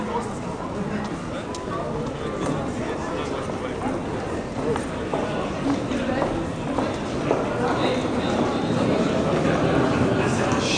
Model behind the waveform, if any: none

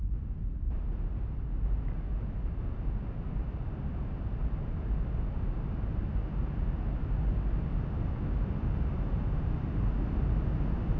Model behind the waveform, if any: none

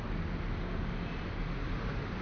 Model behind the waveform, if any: none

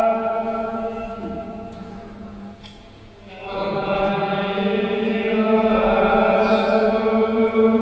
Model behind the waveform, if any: vocoder, Vocos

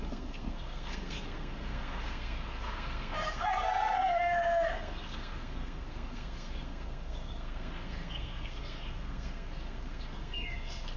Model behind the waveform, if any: codec, SNAC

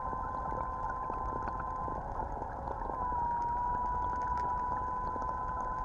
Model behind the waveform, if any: none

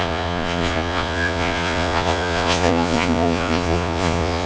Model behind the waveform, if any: vocoder, Vocos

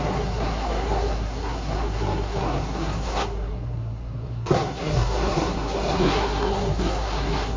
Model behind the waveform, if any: codec, SNAC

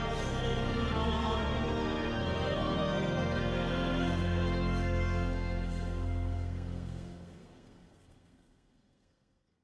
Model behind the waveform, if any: codec, SNAC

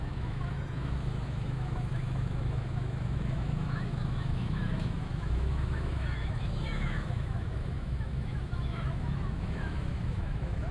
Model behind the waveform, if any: autoencoder, DAC-VAE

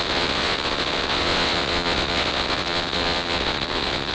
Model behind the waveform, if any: vocoder, WaveNeXt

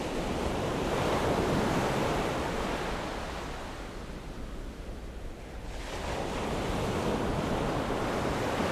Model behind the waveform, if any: none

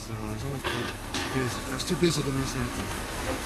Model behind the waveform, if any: codec, SNAC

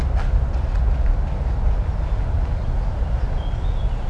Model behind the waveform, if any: none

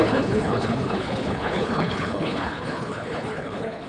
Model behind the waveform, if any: codec, HILCodec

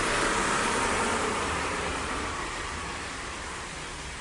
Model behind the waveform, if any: vocoder, BigVGAN v2